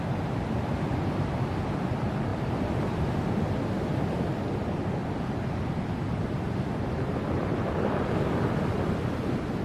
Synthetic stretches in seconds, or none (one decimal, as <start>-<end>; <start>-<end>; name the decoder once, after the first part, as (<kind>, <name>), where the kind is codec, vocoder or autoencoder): none